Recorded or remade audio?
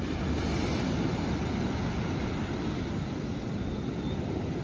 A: recorded